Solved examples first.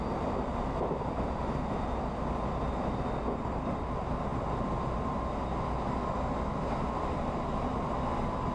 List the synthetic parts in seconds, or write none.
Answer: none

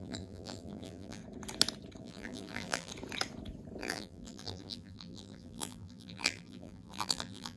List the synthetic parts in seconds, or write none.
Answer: 0.0-1.2 (vocoder, BigVGAN v2); 2.0-2.9; 3.8-7.6

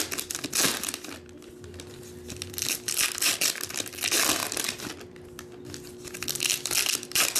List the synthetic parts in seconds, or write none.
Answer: none

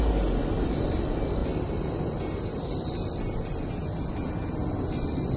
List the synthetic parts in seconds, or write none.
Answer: none

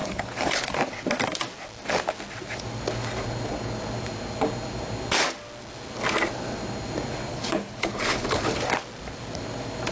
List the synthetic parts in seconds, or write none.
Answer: 0.0-0.7 (codec, HILCodec); 7.3-8.6

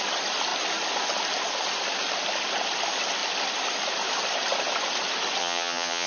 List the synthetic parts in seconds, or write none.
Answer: 5.4-6.1 (vocoder, HiFi-GAN)

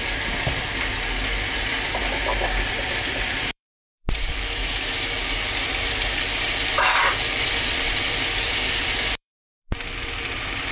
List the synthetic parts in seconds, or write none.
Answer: 0.0-2.0 (vocoder, BigVGAN v2); 2.7-10.7

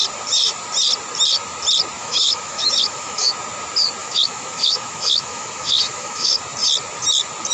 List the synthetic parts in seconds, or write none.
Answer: 2.0-3.3 (autoencoder, DAC-VAE); 4.0-6.4